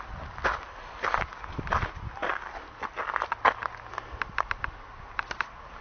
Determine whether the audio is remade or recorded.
recorded